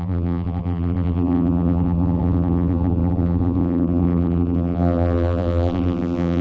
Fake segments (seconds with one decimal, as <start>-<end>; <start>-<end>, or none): 0.0-6.4

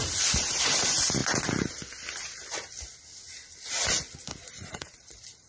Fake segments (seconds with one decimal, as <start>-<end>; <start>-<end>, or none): 0.0-1.2; 4.5-5.5

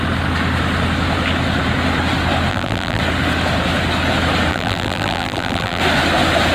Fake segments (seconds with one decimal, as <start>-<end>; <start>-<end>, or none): 2.5-3.0; 4.5-5.8